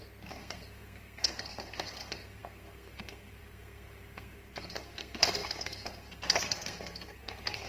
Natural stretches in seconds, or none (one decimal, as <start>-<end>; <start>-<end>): none